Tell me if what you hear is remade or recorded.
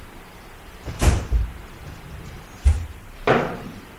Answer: remade